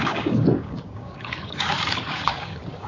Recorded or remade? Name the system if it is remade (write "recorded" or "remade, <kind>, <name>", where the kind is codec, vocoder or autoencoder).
remade, codec, DAC